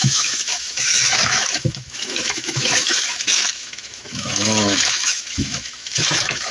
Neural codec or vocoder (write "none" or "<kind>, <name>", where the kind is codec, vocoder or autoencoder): autoencoder, DAC-VAE